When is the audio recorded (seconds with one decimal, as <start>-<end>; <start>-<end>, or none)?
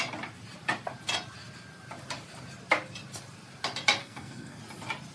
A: 0.0-4.0; 4.6-5.1